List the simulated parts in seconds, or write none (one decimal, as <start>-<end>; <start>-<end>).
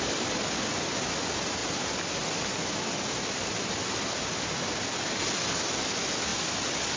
none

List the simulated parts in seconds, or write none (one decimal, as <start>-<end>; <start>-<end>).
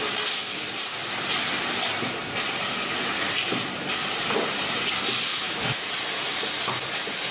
5.3-5.9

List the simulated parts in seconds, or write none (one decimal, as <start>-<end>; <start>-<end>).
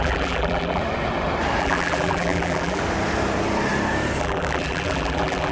0.0-0.8; 1.6-2.8; 4.2-5.5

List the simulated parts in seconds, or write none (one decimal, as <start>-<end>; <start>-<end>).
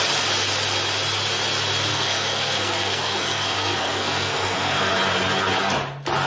1.9-4.9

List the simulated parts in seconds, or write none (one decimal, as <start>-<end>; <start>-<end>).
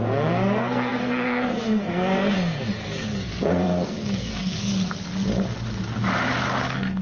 0.0-4.7; 6.6-7.0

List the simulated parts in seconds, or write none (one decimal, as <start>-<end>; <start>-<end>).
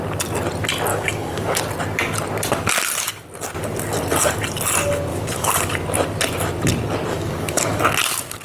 0.9-1.6; 5.1-5.7; 7.1-7.8